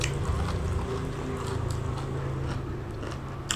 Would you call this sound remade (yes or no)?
no